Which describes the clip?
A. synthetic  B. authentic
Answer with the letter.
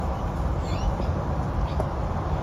B